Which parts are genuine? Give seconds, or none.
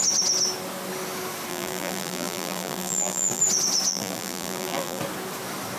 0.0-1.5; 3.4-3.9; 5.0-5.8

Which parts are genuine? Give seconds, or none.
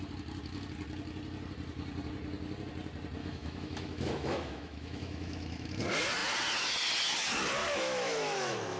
0.0-3.2; 5.8-7.6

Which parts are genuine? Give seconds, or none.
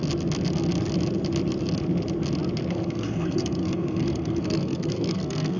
0.0-2.7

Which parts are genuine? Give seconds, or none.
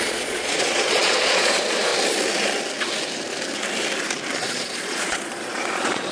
1.9-4.4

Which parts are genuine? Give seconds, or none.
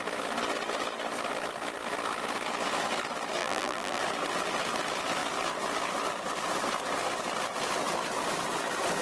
0.0-3.4; 4.0-9.0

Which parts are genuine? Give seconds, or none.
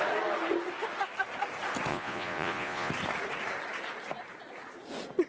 0.0-1.9; 2.9-5.3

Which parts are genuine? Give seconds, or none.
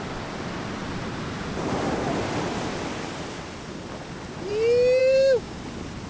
0.0-5.0; 5.6-6.1